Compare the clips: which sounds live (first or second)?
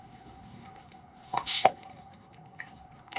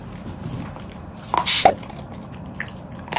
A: second